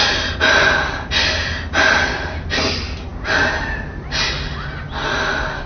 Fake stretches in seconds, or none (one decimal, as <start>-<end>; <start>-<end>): none